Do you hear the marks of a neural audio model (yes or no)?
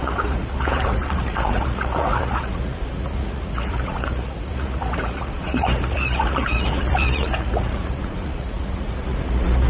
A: yes